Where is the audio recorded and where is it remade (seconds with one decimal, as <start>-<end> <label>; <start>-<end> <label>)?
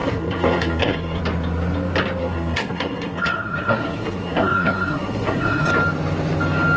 0.0-1.2 remade; 1.2-2.2 recorded; 2.2-5.7 remade; 5.7-6.8 recorded